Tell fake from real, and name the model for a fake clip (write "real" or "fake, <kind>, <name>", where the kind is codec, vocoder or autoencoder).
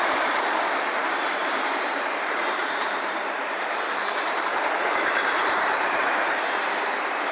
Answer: fake, vocoder, BigVGAN v2